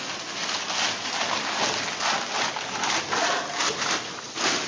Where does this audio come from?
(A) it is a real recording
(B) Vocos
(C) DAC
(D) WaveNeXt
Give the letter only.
A